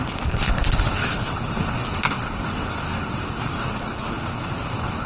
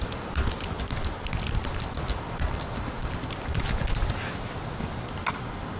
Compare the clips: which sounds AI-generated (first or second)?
first